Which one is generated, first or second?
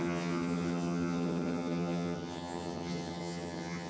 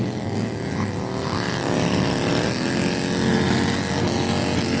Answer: first